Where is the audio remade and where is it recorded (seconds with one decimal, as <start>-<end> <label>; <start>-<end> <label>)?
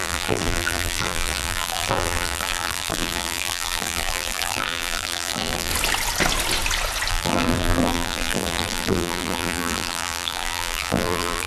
0.0-5.7 remade; 5.7-7.1 recorded; 7.1-11.5 remade